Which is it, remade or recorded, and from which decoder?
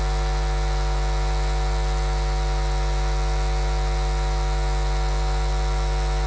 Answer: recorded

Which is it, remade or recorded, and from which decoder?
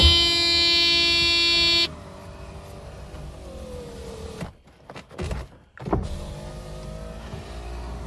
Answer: recorded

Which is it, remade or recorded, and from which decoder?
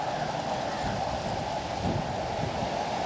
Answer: recorded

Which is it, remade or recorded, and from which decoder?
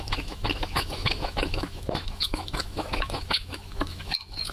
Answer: remade, autoencoder, DAC-VAE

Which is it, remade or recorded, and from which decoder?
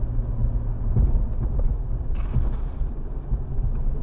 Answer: recorded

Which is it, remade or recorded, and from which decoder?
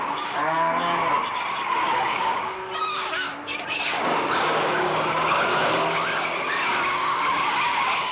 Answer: remade, codec, DAC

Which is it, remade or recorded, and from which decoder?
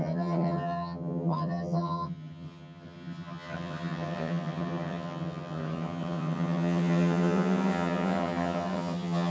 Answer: remade, vocoder, HiFi-GAN